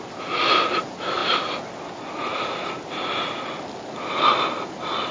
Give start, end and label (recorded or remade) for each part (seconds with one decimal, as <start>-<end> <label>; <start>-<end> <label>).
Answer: 0.0-5.1 recorded